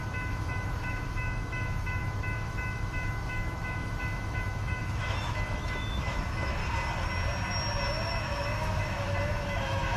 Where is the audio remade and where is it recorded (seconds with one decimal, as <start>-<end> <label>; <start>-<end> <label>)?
0.0-6.6 remade; 6.6-8.1 recorded; 8.1-10.0 remade